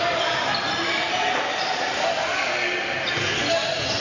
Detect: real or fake real